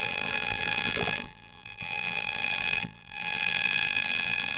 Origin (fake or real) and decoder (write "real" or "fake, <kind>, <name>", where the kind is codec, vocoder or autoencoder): fake, vocoder, BigVGAN v2